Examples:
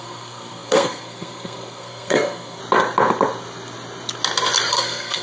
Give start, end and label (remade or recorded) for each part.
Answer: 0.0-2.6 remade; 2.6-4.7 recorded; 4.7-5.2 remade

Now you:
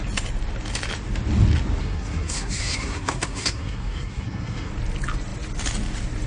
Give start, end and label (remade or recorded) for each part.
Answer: 0.0-1.8 recorded; 1.8-4.7 remade; 4.7-6.3 recorded

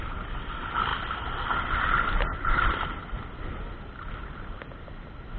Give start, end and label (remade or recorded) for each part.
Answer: 0.0-5.4 recorded

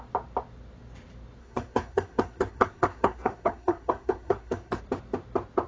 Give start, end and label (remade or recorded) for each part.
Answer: 0.0-1.4 recorded; 1.4-4.8 remade; 4.8-5.7 recorded